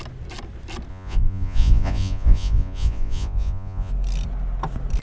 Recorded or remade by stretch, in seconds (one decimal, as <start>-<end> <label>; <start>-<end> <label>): 0.0-0.9 recorded; 0.9-3.9 remade; 3.9-5.0 recorded